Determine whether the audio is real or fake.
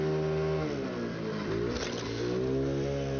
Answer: real